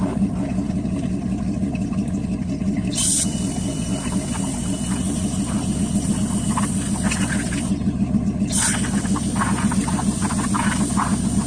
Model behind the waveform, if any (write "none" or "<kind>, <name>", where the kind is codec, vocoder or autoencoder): none